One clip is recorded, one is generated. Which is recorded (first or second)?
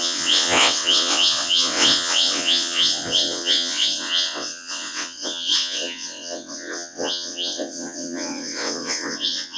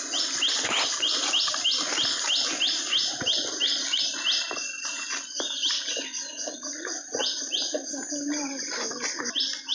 second